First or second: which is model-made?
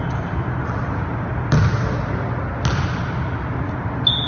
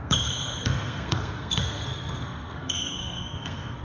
second